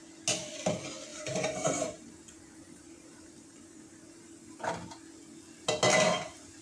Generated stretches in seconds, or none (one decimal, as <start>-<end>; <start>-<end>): 1.1-4.7; 5.9-6.6